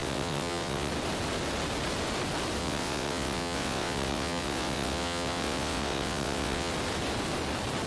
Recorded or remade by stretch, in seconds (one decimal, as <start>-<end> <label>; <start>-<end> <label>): 0.0-0.9 remade; 0.9-2.6 recorded; 2.6-6.7 remade; 6.7-7.9 recorded

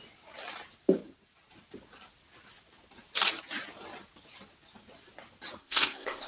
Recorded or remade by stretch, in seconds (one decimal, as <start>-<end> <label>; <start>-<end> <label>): 0.0-5.6 recorded; 5.6-6.3 remade

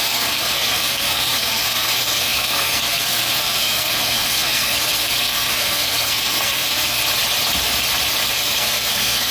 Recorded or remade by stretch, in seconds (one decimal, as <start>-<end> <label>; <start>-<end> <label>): 0.0-7.0 remade; 7.0-8.3 recorded; 8.3-9.3 remade

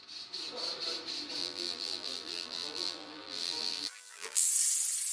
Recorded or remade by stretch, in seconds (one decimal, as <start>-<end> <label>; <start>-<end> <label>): 0.0-1.4 recorded; 1.4-4.5 remade; 4.5-5.1 recorded

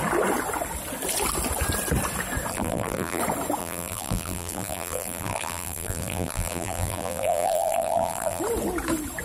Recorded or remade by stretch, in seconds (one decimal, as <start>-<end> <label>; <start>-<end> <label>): 0.0-2.5 recorded; 2.5-3.2 remade; 3.2-3.6 recorded; 3.6-8.4 remade; 8.4-9.2 recorded

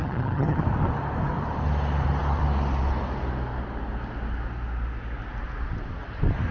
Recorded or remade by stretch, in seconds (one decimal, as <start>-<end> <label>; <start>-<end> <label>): 0.0-0.6 remade; 0.6-6.5 recorded

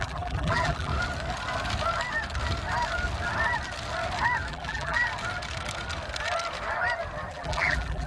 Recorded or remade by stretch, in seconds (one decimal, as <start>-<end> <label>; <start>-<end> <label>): 0.0-0.9 remade; 0.9-4.5 recorded; 4.5-5.0 remade; 5.0-7.3 recorded; 7.3-8.1 remade